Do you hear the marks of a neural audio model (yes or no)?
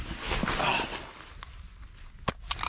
no